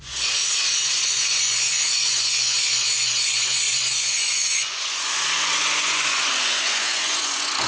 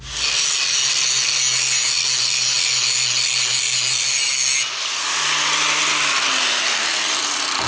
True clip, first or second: second